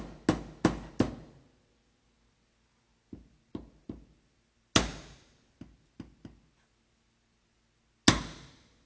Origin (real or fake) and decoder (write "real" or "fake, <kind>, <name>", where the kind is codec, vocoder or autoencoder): real